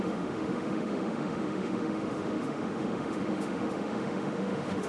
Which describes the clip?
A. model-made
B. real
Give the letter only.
A